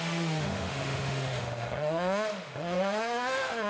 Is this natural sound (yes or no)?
no